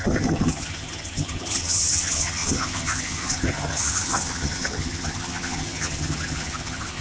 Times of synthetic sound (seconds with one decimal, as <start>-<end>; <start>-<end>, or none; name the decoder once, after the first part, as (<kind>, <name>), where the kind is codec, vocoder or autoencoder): 0.0-7.0 (vocoder, HiFi-GAN)

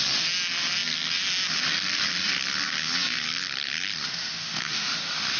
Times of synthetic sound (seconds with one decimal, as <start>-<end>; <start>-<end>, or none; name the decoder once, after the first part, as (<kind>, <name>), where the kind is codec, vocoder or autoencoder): 4.2-5.4 (autoencoder, DAC-VAE)

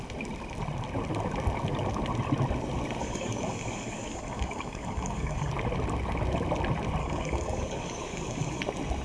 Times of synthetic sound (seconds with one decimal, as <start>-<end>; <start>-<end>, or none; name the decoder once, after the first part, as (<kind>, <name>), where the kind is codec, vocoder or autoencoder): 3.0-5.5 (codec, DAC); 7.0-8.6

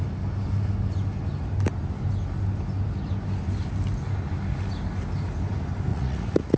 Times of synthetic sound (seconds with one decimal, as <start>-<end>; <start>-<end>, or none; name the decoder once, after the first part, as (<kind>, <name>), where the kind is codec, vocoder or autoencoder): 5.9-6.6 (vocoder, Vocos)

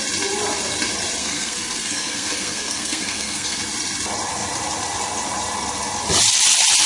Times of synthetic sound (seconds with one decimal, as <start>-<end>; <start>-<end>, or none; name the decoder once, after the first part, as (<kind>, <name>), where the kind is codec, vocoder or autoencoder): 1.2-3.6 (codec, SNAC)

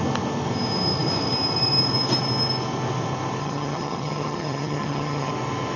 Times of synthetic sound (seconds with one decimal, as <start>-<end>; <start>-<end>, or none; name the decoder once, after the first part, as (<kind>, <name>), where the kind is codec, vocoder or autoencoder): 3.4-5.3 (vocoder, HiFi-GAN)

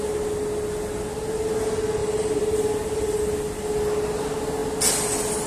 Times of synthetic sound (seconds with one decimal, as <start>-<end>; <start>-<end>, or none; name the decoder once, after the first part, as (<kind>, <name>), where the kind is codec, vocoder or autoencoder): 2.0-3.2 (vocoder, BigVGAN v2)

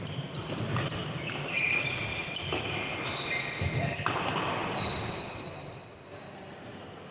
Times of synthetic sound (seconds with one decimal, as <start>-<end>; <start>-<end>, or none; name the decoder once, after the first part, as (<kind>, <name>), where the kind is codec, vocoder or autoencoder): none